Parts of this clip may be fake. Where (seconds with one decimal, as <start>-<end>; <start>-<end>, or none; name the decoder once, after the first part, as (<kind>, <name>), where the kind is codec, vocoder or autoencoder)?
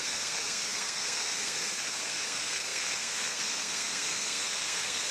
0.0-5.1 (codec, SNAC)